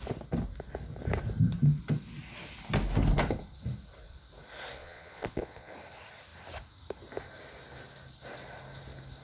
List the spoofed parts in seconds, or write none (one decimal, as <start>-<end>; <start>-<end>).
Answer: 4.8-5.7